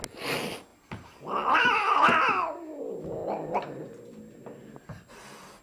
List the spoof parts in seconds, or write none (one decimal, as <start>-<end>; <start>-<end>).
0.7-1.8